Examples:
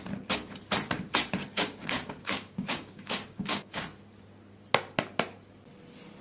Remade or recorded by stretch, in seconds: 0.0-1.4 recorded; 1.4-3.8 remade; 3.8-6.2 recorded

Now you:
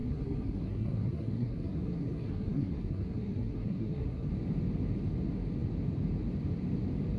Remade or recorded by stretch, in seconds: 0.0-4.3 remade; 4.3-7.2 recorded

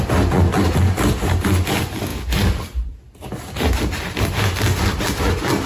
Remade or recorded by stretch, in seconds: 0.0-5.7 recorded

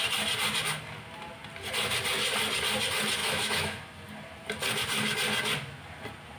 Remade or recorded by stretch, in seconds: 0.0-3.2 recorded; 3.2-3.8 remade; 3.8-6.4 recorded

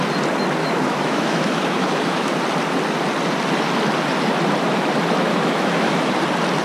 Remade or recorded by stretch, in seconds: 0.0-0.6 recorded; 0.6-2.3 remade; 2.3-5.3 recorded; 5.3-6.1 remade; 6.1-6.6 recorded

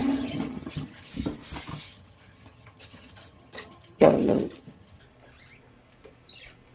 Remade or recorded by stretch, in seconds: 0.0-1.1 remade; 1.1-1.7 recorded; 1.7-5.0 remade; 5.0-6.7 recorded

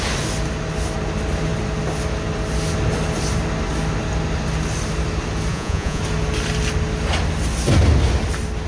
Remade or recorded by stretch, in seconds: 0.0-5.5 recorded; 5.5-6.0 remade; 6.0-8.7 recorded

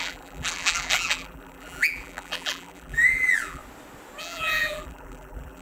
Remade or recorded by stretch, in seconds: 0.0-3.6 remade; 3.6-4.2 recorded; 4.2-5.6 remade